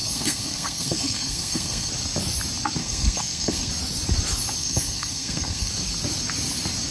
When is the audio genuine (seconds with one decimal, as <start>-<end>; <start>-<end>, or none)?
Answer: 1.9-2.8; 3.7-4.6; 5.7-6.9